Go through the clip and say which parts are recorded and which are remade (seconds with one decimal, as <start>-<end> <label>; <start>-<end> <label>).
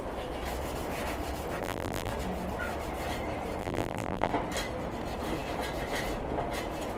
0.0-1.6 recorded; 1.6-2.1 remade; 2.1-3.6 recorded; 3.6-4.3 remade; 4.3-7.0 recorded